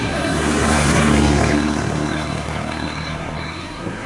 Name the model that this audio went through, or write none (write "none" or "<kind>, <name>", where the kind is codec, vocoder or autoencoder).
codec, SNAC